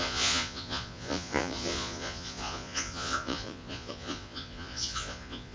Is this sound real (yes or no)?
no